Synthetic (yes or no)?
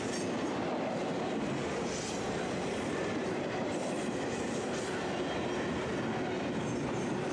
no